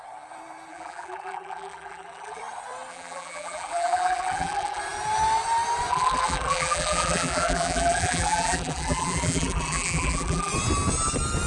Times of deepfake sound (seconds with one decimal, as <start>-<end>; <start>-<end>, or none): 0.7-2.4; 2.9-4.8; 5.9-10.5